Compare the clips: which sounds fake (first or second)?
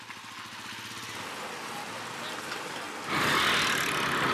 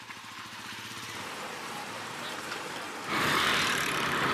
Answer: second